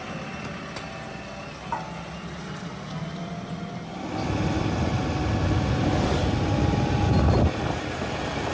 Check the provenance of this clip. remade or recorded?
recorded